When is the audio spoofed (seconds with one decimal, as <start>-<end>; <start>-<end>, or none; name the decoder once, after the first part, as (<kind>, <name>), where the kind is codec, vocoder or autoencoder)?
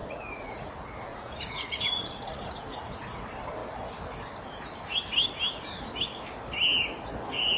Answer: 0.0-0.7 (vocoder, Vocos); 1.1-3.2